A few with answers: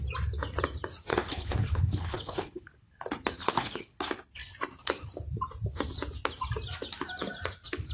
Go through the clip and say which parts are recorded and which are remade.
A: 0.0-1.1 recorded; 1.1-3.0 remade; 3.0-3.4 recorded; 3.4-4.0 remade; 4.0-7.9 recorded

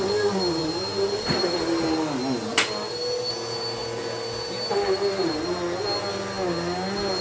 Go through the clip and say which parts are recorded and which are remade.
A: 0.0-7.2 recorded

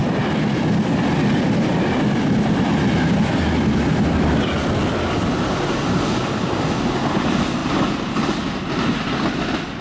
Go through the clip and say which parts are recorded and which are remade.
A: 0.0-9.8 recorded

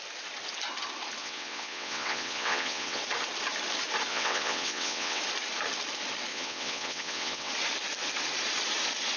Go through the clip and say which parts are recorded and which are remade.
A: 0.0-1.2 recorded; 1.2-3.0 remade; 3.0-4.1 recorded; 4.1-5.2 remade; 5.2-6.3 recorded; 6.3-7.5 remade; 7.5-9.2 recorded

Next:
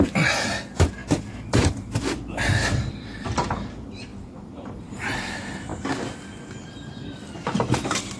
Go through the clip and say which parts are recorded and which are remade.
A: 0.0-5.7 remade; 5.7-6.7 recorded; 6.7-8.2 remade

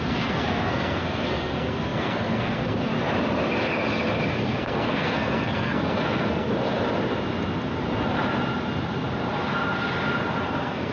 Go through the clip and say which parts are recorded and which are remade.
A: 0.0-2.9 remade; 2.9-4.4 recorded; 4.4-6.5 remade; 6.5-10.4 recorded; 10.4-10.9 remade